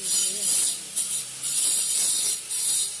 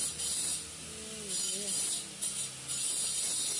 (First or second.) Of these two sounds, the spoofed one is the first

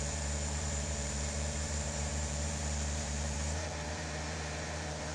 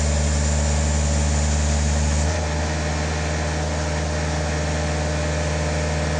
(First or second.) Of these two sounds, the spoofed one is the first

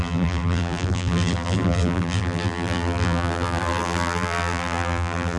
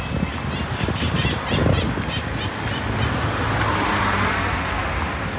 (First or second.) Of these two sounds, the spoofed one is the first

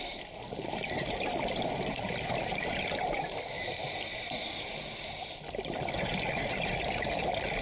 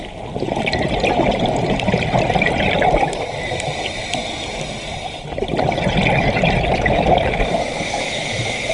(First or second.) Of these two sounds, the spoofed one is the second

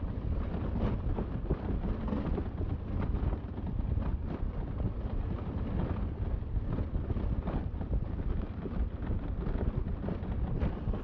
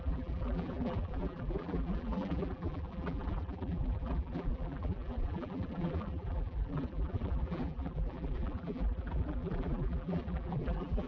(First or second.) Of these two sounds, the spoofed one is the second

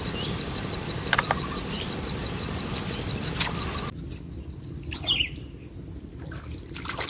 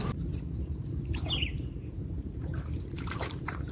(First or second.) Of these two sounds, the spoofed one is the second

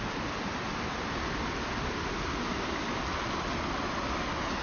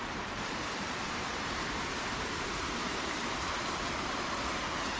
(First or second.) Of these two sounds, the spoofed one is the second